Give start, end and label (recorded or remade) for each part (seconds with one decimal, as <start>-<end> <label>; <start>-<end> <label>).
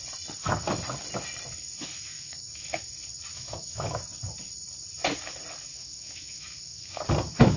0.0-1.9 recorded; 1.9-2.8 remade; 2.8-3.3 recorded; 3.3-4.0 remade; 4.0-5.7 recorded; 5.7-7.0 remade; 7.0-7.6 recorded